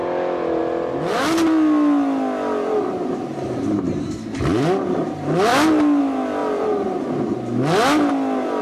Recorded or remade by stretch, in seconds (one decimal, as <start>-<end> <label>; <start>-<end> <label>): 0.0-8.6 recorded